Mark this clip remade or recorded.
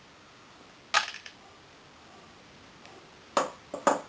recorded